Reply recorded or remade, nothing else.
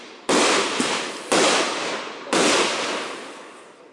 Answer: recorded